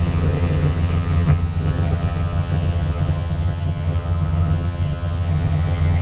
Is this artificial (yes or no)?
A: yes